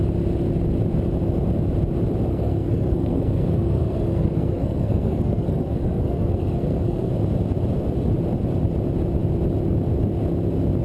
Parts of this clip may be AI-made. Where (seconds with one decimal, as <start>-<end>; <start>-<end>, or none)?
2.3-7.1

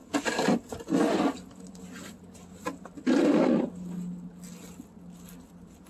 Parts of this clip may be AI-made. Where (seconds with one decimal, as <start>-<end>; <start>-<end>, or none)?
none

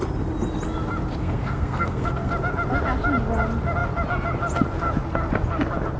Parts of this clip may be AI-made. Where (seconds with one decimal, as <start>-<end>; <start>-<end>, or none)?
1.2-2.3

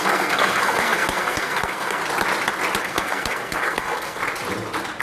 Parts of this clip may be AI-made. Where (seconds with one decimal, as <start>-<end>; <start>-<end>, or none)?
0.0-2.0; 2.8-4.2